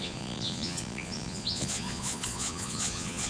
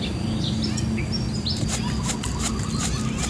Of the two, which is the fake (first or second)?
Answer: first